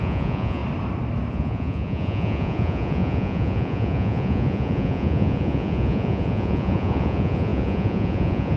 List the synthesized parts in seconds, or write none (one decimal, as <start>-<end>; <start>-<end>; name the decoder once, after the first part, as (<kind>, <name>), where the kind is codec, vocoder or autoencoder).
0.0-0.6 (vocoder, Vocos); 1.3-8.6